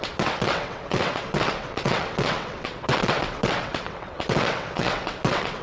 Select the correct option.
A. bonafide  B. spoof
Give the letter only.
B